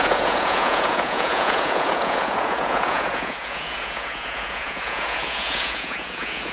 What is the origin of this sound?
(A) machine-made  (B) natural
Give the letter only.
A